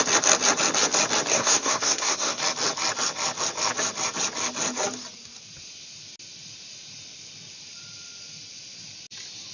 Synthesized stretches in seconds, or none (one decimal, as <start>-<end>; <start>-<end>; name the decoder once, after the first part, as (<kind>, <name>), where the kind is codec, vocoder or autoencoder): 1.3-2.4 (codec, SNAC)